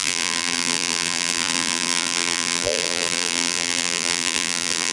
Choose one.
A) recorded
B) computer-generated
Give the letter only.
B